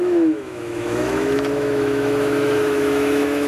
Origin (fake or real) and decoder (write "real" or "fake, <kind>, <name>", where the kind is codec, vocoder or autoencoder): fake, autoencoder, DAC-VAE